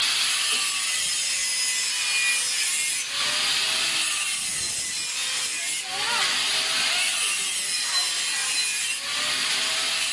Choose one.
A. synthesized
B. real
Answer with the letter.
B